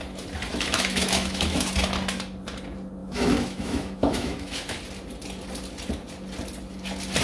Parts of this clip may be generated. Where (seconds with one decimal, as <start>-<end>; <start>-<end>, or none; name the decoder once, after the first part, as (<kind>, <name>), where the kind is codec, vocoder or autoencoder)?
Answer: 0.5-1.7 (autoencoder, DAC-VAE); 3.0-4.8

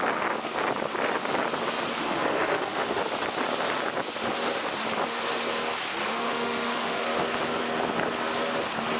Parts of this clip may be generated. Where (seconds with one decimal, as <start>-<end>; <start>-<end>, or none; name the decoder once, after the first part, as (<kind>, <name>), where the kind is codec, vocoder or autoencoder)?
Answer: 1.9-3.0 (autoencoder, DAC-VAE); 6.1-7.0

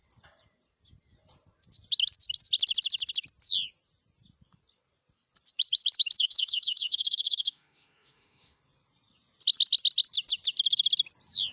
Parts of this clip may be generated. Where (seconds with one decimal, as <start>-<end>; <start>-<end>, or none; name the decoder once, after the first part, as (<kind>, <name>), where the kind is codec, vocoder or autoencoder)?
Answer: 6.2-8.6 (autoencoder, DAC-VAE)